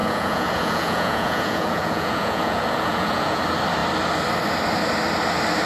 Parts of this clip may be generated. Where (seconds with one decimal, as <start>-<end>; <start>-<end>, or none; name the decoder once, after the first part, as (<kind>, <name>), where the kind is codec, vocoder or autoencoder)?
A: 0.0-3.4 (vocoder, Vocos)